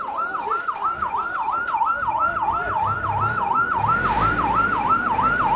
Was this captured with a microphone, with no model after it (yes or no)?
no